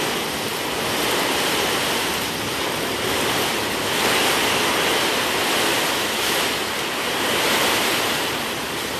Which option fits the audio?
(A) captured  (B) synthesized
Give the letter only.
A